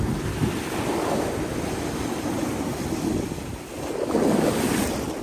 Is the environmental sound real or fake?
real